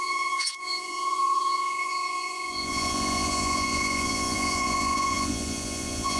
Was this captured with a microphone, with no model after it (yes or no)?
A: no